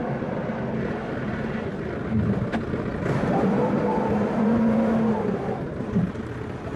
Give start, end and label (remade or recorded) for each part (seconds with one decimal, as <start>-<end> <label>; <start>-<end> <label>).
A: 0.0-2.0 remade; 2.0-2.5 recorded; 2.5-6.8 remade